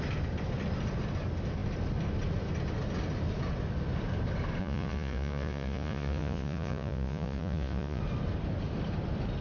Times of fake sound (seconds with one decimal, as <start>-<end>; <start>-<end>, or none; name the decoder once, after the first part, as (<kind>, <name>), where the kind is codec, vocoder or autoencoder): 4.6-8.0 (vocoder, Vocos)